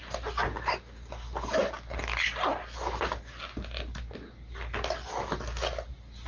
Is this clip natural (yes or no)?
yes